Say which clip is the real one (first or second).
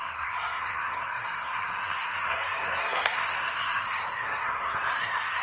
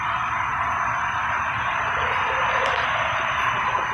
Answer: second